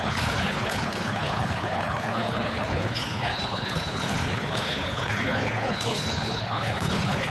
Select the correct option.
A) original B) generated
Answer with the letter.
B